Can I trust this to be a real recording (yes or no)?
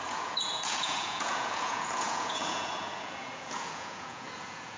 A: no